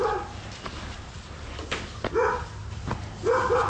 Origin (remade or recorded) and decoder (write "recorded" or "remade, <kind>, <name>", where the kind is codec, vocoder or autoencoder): recorded